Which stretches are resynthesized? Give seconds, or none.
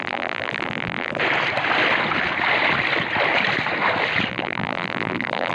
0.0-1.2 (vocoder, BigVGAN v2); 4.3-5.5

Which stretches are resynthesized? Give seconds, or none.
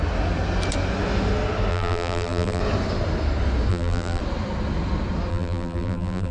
1.7-2.6 (vocoder, BigVGAN v2); 3.7-4.2; 5.3-6.3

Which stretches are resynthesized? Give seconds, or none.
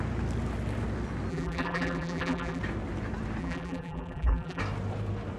1.3-2.6 (vocoder, BigVGAN v2); 3.4-4.6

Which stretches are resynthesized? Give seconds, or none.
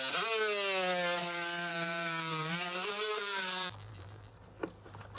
1.2-4.3 (vocoder, BigVGAN v2)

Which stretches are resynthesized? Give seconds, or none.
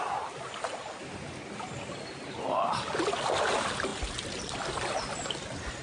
none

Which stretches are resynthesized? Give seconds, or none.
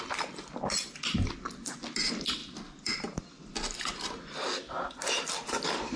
2.4-3.5 (vocoder, BigVGAN v2)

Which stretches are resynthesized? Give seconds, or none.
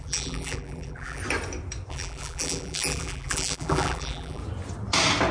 0.0-1.2 (vocoder, BigVGAN v2); 1.9-4.4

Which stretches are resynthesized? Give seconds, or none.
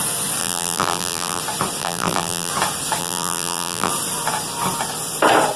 0.4-1.4 (vocoder, BigVGAN v2); 1.8-2.5; 3.0-3.9